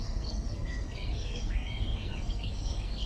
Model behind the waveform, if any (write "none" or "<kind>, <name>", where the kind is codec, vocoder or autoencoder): codec, SNAC